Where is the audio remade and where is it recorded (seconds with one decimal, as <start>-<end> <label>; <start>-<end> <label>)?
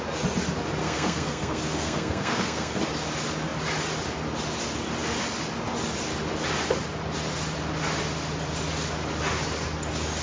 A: 0.0-0.8 recorded; 0.8-2.8 remade; 2.8-10.2 recorded